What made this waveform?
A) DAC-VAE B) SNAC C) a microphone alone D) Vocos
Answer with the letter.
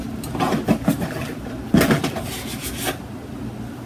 C